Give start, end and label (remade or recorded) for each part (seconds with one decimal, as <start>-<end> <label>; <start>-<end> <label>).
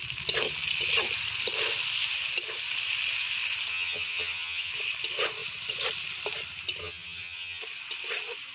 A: 0.0-3.7 recorded; 3.7-4.7 remade; 4.7-6.8 recorded; 6.8-7.6 remade; 7.6-8.5 recorded